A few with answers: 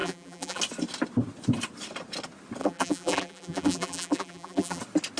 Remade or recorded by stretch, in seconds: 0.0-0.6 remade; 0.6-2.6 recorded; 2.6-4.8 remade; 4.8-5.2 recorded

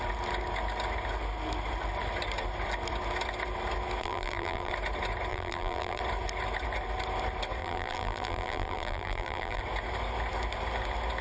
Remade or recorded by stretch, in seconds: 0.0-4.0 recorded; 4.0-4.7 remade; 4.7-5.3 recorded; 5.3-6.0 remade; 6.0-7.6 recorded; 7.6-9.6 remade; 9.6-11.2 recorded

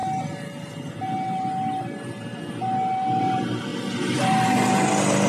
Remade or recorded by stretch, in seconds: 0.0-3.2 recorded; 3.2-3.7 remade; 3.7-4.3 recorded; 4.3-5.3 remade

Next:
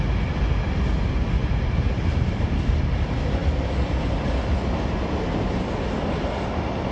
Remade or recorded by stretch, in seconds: 0.0-1.4 recorded; 1.4-2.7 remade; 2.7-6.9 recorded

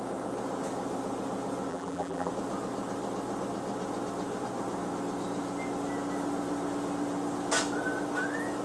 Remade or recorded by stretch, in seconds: 0.0-1.7 recorded; 1.7-2.3 remade; 2.3-8.6 recorded